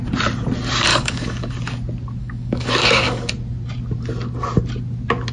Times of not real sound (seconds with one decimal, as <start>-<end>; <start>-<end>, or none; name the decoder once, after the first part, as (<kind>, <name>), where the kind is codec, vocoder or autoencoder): 0.9-1.5 (codec, DAC); 2.2-3.3